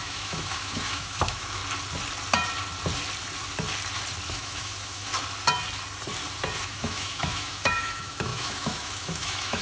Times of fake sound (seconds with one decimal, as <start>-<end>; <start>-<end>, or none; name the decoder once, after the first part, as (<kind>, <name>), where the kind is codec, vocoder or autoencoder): 0.0-1.6 (autoencoder, DAC-VAE); 4.3-5.1; 6.6-9.6